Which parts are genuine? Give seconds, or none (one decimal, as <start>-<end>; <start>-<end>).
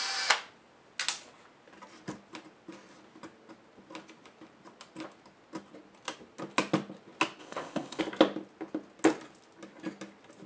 0.0-7.4; 8.0-10.5